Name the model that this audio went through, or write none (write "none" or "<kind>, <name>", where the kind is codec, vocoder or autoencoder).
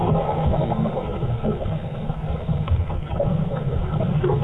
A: codec, SNAC